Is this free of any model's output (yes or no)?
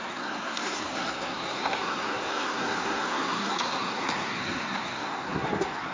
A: no